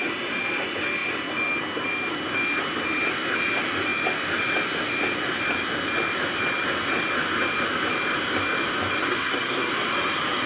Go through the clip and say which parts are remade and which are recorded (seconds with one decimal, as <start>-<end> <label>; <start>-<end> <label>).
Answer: 0.0-9.0 recorded; 9.0-9.7 remade; 9.7-10.5 recorded

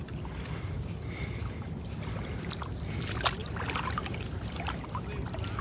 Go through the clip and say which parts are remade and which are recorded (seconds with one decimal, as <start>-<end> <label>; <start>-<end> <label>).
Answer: 0.0-5.6 recorded

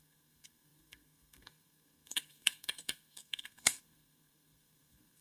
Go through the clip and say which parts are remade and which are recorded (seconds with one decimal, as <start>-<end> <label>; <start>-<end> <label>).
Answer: 0.0-5.2 remade

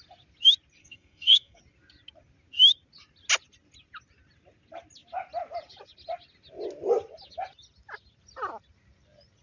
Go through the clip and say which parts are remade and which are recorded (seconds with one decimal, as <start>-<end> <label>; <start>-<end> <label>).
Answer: 0.0-0.8 recorded; 0.8-1.6 remade; 1.6-9.4 recorded